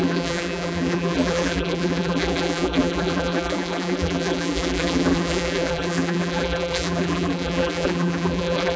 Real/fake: fake